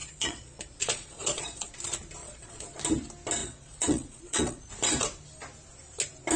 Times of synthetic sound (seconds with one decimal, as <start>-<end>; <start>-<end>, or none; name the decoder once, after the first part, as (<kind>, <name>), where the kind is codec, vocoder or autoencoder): 0.0-1.7 (vocoder, Vocos); 2.2-2.8; 3.4-4.7